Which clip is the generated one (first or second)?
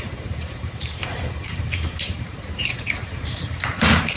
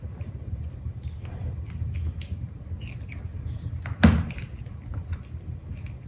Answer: first